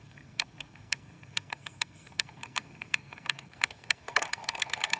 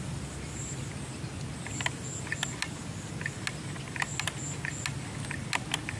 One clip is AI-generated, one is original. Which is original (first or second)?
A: second